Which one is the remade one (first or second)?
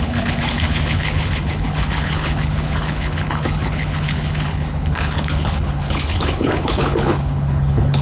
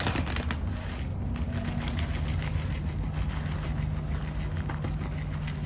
first